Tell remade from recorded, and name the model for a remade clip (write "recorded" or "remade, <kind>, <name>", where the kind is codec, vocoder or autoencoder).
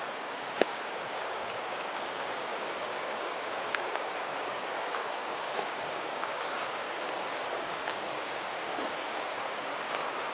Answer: remade, codec, DAC